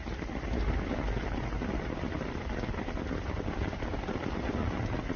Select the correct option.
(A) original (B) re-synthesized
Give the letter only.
A